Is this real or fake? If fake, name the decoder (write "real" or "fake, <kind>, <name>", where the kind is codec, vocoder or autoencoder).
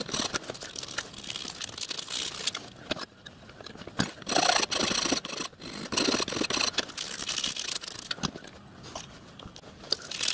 real